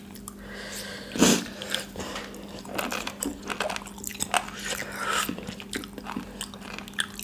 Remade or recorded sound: recorded